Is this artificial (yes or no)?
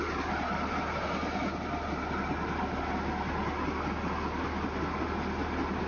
no